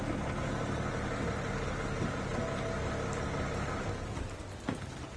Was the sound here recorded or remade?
recorded